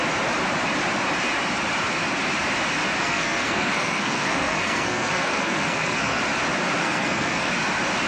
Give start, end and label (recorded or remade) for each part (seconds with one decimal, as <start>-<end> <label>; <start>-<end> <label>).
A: 0.0-3.0 recorded; 3.0-6.2 remade; 6.2-6.8 recorded; 6.8-7.5 remade; 7.5-8.1 recorded